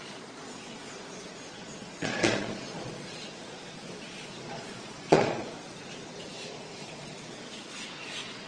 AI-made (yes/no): yes